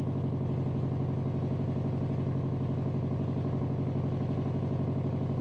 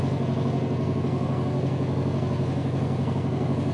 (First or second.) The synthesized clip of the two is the second